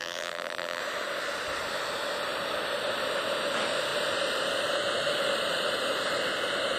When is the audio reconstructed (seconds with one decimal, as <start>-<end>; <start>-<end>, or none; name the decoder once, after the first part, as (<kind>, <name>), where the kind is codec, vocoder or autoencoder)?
0.0-0.8 (vocoder, BigVGAN v2)